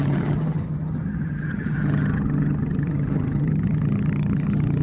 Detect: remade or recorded remade